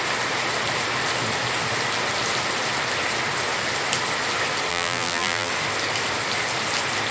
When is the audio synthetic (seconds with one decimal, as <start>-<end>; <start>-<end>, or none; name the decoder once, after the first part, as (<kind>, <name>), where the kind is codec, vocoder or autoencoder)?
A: 4.7-5.5 (vocoder, BigVGAN v2)

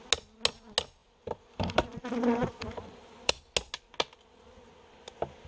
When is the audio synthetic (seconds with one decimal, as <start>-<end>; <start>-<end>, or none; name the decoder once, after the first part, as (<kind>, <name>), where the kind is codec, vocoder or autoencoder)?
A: 1.0-3.3 (vocoder, BigVGAN v2)